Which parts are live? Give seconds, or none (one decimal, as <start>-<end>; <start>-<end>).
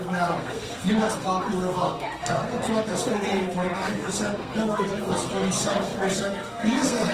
none